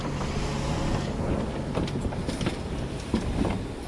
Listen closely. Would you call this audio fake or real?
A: real